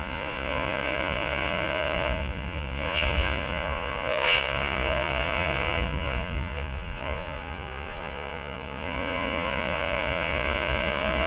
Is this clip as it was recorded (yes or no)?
no